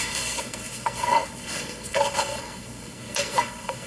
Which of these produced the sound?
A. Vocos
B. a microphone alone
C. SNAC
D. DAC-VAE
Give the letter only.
C